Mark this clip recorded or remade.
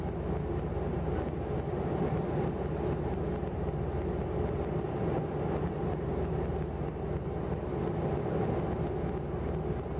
recorded